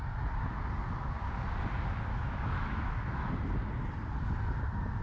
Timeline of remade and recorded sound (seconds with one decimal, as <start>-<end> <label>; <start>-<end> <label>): 0.0-2.1 recorded; 2.1-3.3 remade; 3.3-5.0 recorded

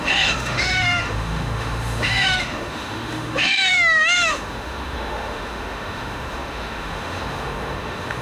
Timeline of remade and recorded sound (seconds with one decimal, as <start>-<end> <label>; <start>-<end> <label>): 0.0-8.2 remade